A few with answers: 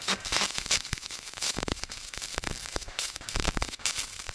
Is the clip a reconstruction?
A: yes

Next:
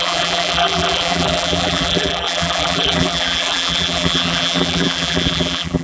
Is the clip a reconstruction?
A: yes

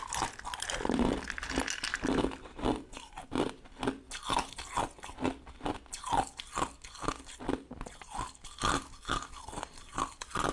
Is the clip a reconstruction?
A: no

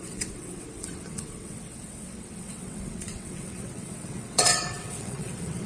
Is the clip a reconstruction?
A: yes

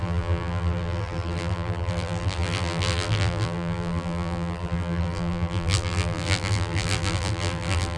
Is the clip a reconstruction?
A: yes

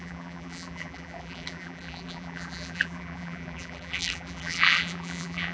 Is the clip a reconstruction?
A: yes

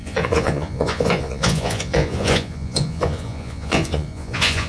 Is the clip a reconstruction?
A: yes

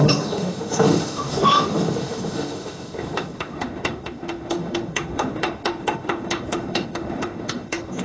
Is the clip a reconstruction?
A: yes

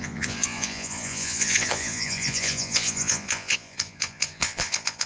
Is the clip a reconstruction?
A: yes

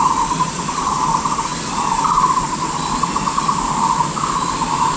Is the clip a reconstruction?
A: no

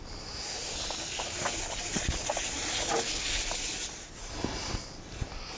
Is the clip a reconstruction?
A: no